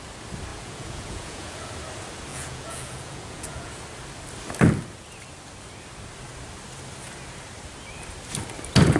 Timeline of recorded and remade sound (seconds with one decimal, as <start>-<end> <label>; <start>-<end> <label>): 0.0-0.5 recorded; 0.5-1.7 remade; 1.7-2.3 recorded; 2.3-3.7 remade; 3.7-9.0 recorded